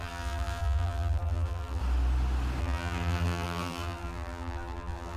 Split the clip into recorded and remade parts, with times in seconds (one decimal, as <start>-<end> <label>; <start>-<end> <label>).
0.0-1.8 remade; 1.8-2.6 recorded; 2.6-5.2 remade